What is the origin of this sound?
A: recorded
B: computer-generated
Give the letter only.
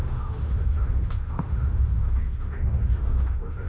B